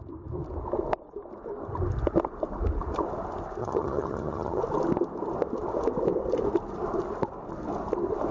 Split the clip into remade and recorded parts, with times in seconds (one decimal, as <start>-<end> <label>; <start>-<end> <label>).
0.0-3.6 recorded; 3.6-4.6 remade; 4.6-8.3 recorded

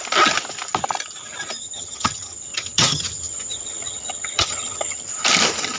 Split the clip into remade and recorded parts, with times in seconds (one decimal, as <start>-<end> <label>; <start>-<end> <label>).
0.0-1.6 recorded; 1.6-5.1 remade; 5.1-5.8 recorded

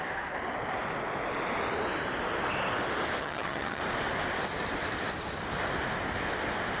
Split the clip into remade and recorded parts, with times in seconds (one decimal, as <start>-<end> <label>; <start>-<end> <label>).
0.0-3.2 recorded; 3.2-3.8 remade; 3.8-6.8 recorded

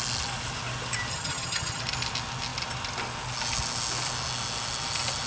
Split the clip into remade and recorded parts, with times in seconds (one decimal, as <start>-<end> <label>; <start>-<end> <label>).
0.0-1.1 recorded; 1.1-1.8 remade; 1.8-5.3 recorded

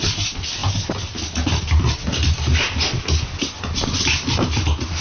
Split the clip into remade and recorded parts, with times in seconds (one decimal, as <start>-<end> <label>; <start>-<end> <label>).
0.0-5.0 recorded

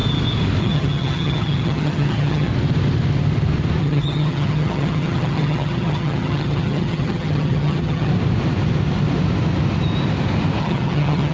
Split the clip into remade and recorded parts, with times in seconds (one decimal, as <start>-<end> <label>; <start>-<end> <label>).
0.0-0.6 recorded; 0.6-2.5 remade; 2.5-3.8 recorded; 3.8-8.1 remade; 8.1-10.6 recorded; 10.6-11.3 remade

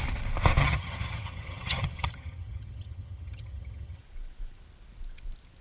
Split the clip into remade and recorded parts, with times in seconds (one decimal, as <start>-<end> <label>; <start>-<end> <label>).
0.0-0.6 recorded; 0.6-4.0 remade; 4.0-5.6 recorded

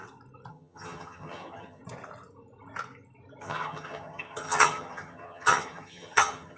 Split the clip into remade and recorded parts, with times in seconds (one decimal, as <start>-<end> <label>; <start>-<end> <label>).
0.0-0.5 recorded; 0.5-1.8 remade; 1.8-3.4 recorded; 3.4-6.6 remade